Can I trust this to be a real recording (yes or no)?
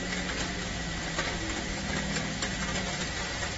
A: yes